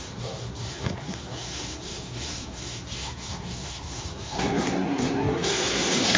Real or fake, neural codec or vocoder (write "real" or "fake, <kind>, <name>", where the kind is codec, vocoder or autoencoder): fake, codec, SNAC